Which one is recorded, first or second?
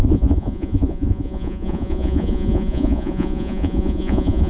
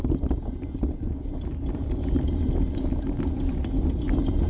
second